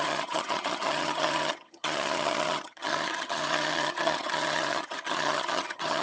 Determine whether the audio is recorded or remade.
remade